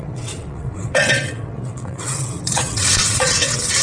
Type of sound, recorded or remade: remade